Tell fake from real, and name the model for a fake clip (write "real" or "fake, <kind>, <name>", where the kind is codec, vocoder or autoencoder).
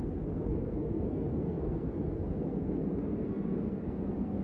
fake, codec, SNAC